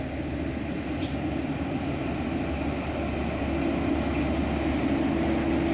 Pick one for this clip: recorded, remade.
recorded